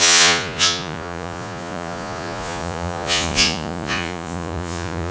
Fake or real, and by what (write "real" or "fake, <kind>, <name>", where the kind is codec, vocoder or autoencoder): fake, vocoder, Vocos